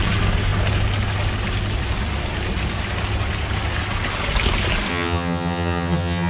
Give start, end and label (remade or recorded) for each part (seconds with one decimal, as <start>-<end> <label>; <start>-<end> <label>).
0.0-4.9 recorded; 4.9-6.3 remade